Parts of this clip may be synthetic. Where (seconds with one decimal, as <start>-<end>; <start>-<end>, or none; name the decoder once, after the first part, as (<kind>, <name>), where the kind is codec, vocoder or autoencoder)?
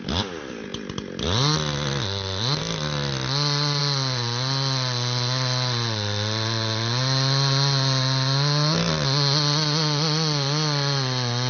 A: none